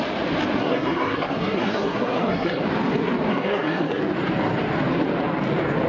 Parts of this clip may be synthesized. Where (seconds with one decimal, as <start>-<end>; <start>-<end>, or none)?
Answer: 0.6-2.6; 3.3-4.0